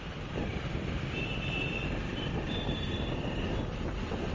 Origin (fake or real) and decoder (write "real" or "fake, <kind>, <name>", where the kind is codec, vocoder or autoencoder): real